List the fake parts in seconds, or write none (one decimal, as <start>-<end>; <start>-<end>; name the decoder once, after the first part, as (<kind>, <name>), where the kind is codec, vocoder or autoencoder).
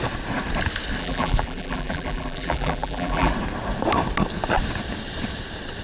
1.0-3.3 (vocoder, BigVGAN v2)